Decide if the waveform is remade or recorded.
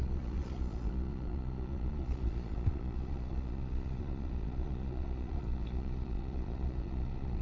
remade